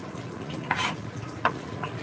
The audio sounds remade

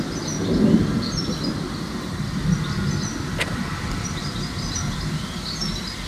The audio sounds recorded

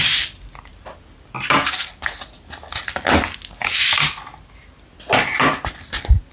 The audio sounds recorded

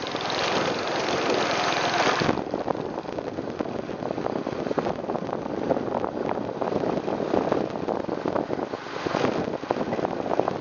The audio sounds recorded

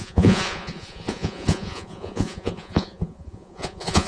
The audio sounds remade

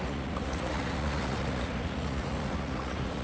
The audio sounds remade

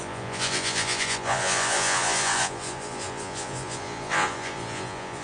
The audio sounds remade